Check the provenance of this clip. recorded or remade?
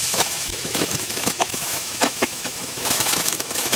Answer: remade